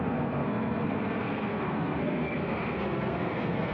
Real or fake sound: fake